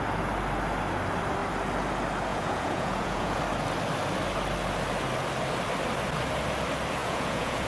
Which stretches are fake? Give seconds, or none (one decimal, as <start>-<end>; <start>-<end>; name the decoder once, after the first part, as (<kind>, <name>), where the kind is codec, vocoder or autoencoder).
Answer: 2.3-3.4 (vocoder, Vocos); 7.0-7.7